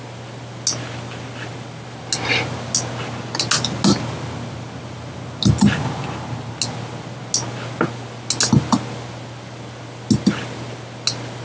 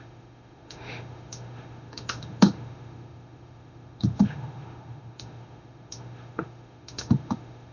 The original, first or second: first